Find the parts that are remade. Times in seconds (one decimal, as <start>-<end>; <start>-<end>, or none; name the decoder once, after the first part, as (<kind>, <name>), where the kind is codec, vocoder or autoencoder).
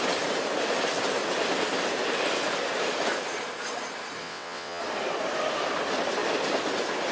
4.2-4.8 (vocoder, WaveNeXt)